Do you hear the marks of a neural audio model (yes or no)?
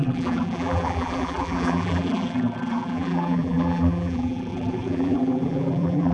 yes